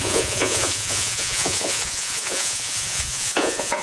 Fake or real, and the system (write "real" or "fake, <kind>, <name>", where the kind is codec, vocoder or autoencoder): fake, vocoder, Vocos